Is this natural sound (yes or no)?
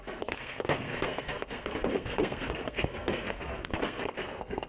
no